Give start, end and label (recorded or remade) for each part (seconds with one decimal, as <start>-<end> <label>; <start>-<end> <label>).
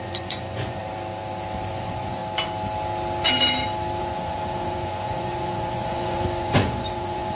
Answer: 0.0-0.8 remade; 0.8-1.7 recorded; 1.7-2.2 remade; 2.2-4.0 recorded; 4.0-7.3 remade